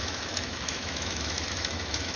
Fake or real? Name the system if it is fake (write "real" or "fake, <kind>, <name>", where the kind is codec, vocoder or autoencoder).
fake, autoencoder, DAC-VAE